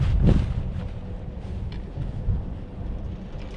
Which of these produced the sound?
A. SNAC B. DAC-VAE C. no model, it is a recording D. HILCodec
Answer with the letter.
C